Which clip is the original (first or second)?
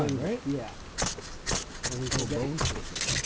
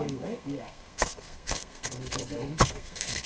first